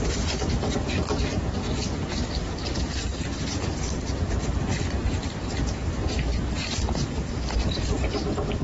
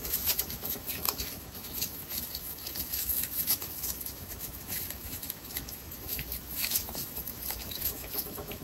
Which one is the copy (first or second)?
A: second